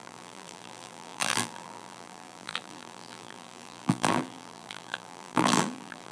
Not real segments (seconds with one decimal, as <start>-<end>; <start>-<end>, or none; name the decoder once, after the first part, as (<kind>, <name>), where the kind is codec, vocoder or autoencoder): 0.0-6.1 (vocoder, BigVGAN v2)